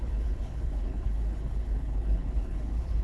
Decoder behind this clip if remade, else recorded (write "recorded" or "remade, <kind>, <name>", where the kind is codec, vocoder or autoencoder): remade, codec, HILCodec